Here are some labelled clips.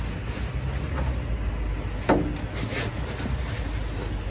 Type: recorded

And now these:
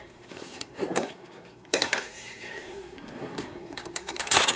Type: remade